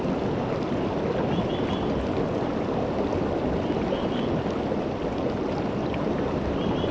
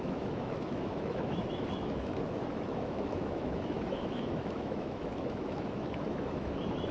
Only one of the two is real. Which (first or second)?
first